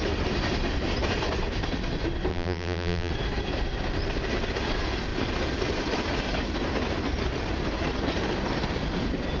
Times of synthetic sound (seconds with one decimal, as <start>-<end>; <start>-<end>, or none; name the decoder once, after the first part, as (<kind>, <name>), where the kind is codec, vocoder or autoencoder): 2.3-3.1 (vocoder, BigVGAN v2)

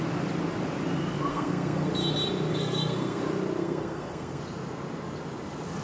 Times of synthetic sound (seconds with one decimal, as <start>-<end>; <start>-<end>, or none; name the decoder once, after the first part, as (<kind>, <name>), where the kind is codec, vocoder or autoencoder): 1.3-1.9 (codec, SNAC); 2.5-3.2; 3.6-4.4

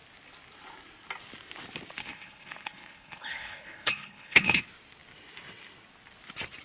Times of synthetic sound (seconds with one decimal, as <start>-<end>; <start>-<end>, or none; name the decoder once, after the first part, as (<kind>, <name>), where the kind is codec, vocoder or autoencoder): 2.0-4.6 (codec, HILCodec)

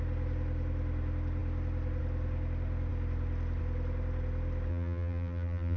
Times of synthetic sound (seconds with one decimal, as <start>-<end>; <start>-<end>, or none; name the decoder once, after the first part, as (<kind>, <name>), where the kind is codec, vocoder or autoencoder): 4.7-5.8 (vocoder, BigVGAN v2)